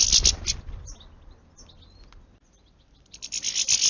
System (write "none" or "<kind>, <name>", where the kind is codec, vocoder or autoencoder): none